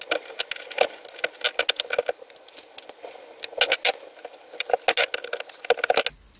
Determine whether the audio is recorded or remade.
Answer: recorded